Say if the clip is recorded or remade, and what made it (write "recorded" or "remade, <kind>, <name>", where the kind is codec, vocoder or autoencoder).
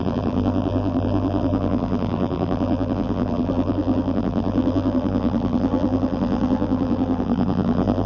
remade, vocoder, BigVGAN v2